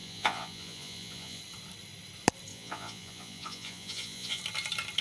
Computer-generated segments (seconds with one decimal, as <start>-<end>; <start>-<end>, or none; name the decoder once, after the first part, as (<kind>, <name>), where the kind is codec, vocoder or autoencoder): 0.0-1.4 (vocoder, Vocos); 2.5-4.4